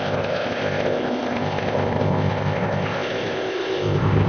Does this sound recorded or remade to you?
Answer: remade